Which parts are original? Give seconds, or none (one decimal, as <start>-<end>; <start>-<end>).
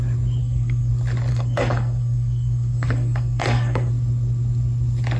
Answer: 0.0-0.4; 0.9-1.3; 3.9-5.2